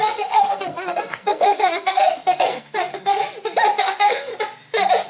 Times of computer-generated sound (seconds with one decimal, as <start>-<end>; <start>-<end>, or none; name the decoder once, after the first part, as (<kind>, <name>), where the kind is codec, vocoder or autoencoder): 0.0-3.2 (codec, SNAC); 3.8-4.3